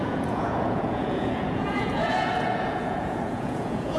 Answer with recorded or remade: remade